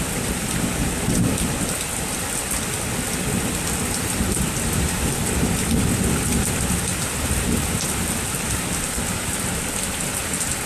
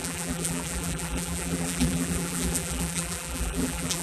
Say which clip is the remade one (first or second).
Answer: second